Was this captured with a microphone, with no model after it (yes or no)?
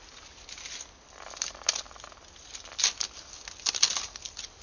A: yes